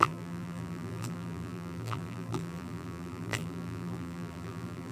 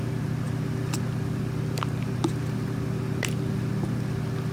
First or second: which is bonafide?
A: second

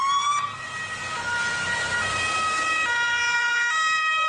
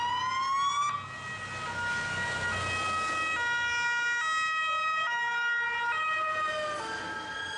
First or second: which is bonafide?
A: second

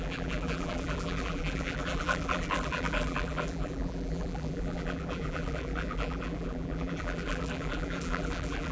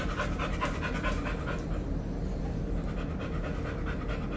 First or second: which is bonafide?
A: second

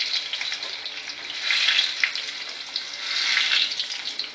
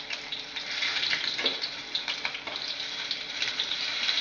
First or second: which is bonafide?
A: first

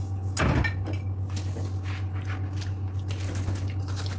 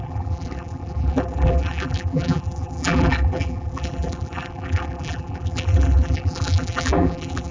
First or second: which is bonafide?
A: first